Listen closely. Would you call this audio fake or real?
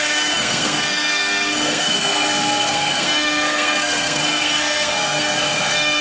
fake